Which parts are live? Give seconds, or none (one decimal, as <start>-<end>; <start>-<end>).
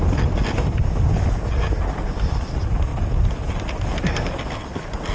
0.0-5.1